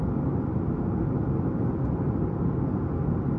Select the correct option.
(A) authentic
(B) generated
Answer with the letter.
A